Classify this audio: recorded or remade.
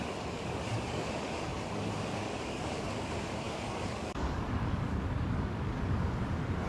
remade